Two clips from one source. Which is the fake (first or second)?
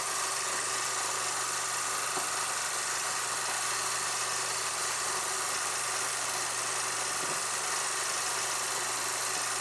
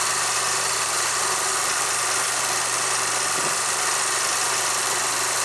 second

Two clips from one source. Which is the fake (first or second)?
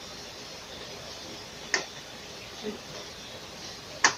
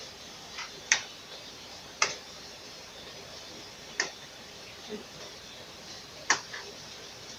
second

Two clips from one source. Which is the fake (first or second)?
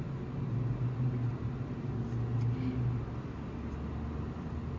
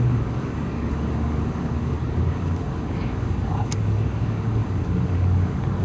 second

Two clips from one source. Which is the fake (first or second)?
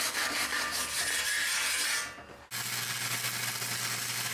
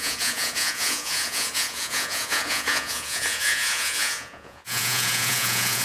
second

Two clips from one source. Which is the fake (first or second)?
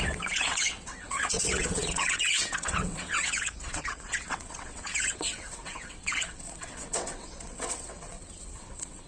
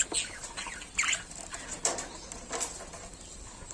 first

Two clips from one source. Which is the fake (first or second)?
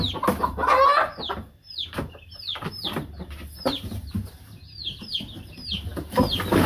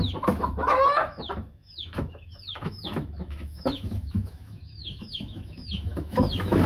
second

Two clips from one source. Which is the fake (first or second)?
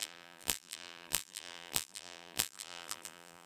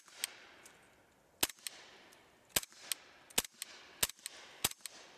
first